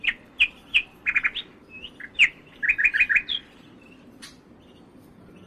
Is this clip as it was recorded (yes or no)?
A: yes